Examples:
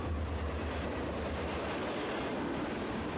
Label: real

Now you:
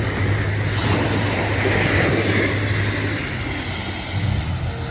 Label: real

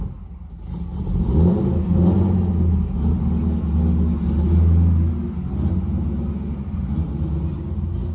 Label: real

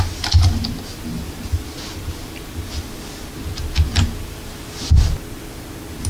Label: real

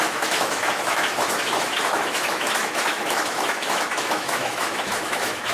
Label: fake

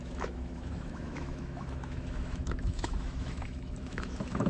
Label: fake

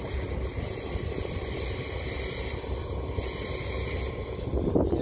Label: real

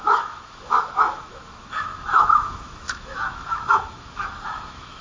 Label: fake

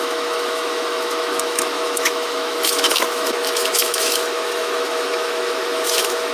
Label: fake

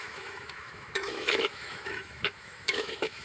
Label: fake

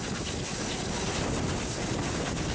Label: real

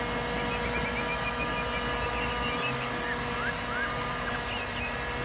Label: real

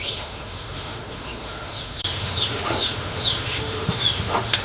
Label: fake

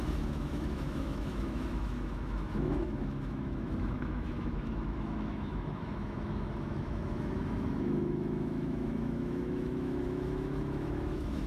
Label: fake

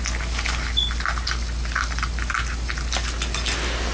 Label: real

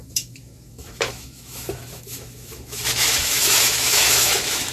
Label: fake